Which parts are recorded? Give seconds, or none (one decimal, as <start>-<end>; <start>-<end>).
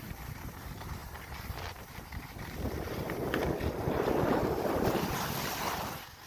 0.0-6.3